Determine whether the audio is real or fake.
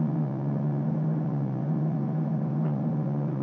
fake